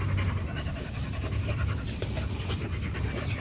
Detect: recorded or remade recorded